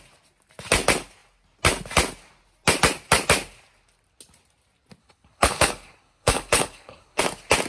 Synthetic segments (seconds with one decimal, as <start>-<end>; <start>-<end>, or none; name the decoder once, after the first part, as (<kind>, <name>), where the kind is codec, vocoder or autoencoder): 5.0-7.2 (codec, HILCodec)